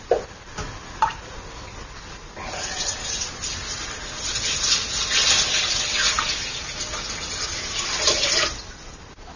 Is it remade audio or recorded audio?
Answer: recorded